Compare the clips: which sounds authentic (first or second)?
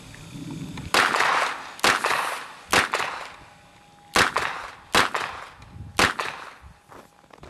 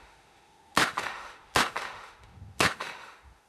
first